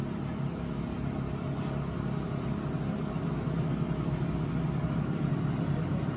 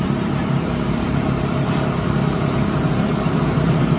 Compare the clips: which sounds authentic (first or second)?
first